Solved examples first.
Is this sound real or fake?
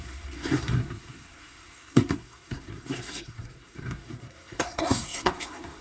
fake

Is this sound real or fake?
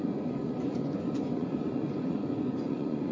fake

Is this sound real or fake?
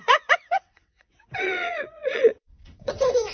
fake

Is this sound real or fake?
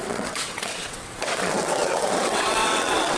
fake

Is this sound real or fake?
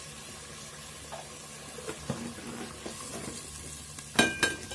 real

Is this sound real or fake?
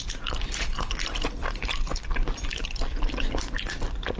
real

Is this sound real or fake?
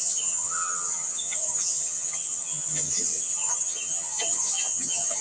fake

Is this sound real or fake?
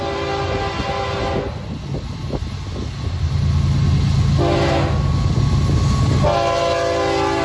real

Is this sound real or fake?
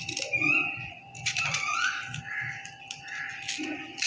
real